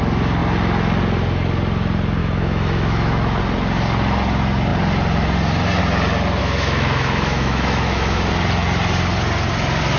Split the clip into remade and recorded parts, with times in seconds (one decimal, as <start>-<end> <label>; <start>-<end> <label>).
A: 0.0-2.2 recorded; 2.2-3.4 remade; 3.4-6.4 recorded; 6.4-8.3 remade; 8.3-10.0 recorded